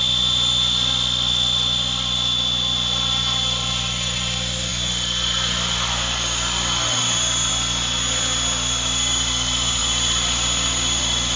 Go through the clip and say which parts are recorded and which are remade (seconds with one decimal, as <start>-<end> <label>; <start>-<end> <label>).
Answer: 0.0-11.4 recorded